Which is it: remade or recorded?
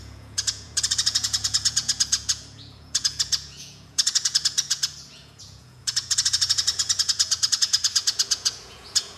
remade